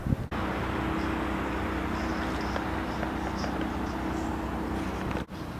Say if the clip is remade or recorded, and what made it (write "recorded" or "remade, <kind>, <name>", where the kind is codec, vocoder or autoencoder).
recorded